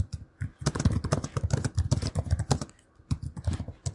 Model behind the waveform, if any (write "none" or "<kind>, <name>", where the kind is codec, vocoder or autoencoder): none